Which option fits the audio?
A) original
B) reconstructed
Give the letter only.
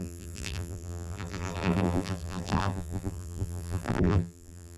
B